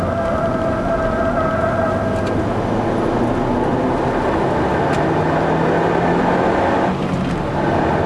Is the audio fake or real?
real